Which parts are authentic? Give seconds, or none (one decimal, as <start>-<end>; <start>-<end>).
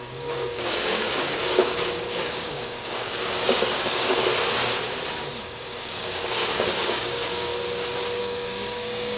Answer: 4.1-5.4; 7.5-8.2